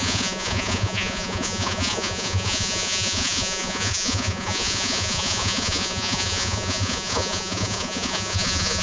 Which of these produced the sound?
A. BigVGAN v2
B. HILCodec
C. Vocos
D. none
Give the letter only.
C